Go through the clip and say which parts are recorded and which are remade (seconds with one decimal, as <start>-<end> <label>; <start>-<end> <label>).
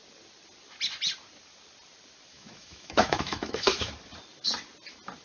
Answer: 0.0-2.3 recorded; 2.3-3.9 remade; 3.9-5.2 recorded